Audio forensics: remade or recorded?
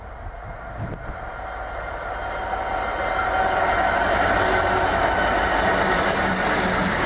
recorded